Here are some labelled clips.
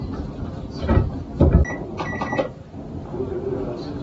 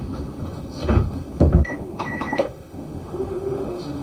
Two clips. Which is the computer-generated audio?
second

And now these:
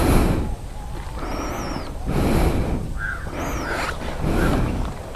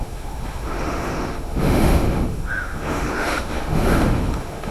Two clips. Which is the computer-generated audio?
second